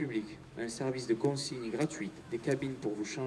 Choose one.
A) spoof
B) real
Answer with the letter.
A